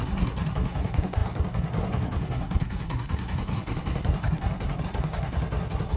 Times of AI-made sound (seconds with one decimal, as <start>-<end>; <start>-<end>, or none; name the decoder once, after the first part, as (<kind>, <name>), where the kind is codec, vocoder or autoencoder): 0.0-6.0 (codec, SNAC)